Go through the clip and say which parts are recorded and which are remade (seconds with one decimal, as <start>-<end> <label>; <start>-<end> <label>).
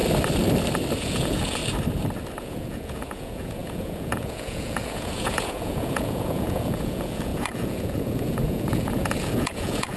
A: 0.0-1.0 recorded; 1.0-1.6 remade; 1.6-2.4 recorded; 2.4-10.0 remade